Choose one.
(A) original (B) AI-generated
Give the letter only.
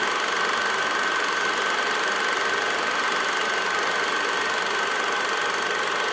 A